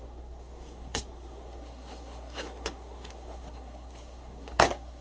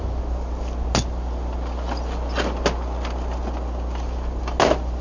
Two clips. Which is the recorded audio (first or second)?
second